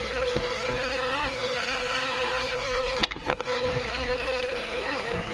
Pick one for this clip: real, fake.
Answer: fake